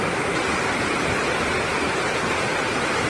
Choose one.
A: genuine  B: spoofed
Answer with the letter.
A